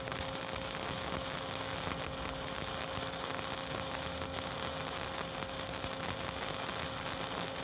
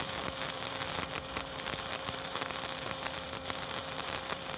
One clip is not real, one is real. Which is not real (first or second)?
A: second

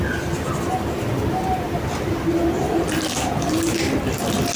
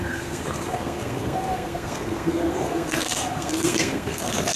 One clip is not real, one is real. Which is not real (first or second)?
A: second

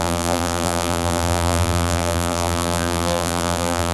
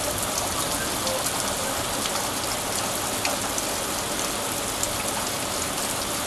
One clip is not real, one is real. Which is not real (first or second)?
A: first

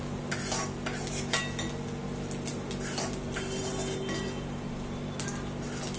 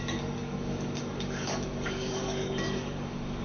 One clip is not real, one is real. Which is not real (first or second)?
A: second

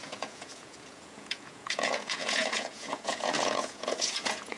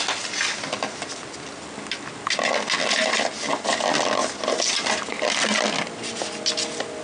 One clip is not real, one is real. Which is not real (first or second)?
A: first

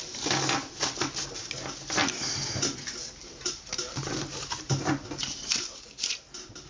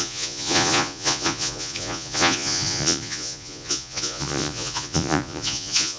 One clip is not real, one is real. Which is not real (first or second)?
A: second